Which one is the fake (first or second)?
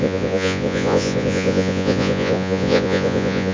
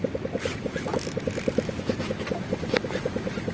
first